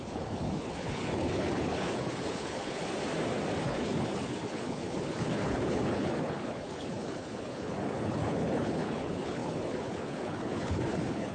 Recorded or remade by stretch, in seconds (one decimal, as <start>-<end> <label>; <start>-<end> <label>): 0.0-2.8 remade; 2.8-3.6 recorded; 3.6-11.3 remade